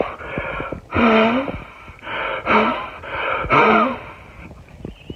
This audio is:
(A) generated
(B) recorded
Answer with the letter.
B